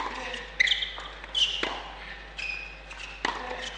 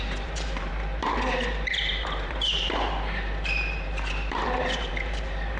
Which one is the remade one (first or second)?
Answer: second